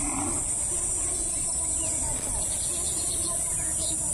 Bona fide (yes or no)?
yes